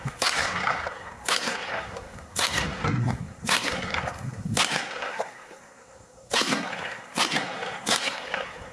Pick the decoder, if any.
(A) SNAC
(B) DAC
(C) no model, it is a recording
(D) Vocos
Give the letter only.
A